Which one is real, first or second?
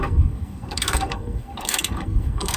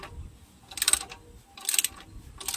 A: second